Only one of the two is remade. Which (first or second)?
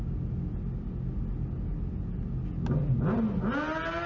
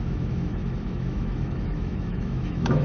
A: second